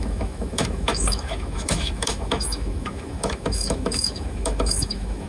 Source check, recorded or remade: remade